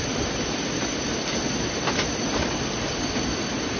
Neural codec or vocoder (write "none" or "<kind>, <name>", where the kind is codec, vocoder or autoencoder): none